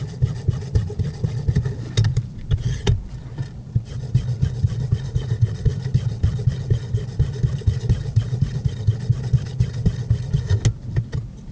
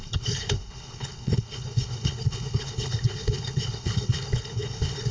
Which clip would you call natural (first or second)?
first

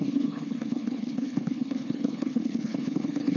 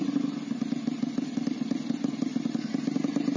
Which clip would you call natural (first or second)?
second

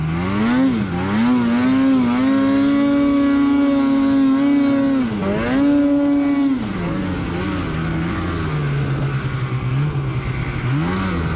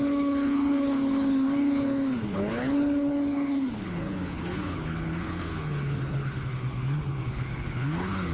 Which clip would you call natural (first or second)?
first